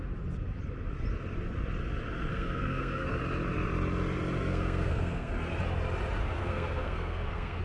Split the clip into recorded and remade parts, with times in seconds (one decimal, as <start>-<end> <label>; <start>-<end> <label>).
0.0-2.3 recorded; 2.3-3.2 remade; 3.2-4.4 recorded; 4.4-5.3 remade; 5.3-6.2 recorded; 6.2-7.6 remade